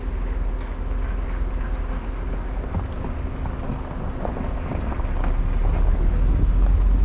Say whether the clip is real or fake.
real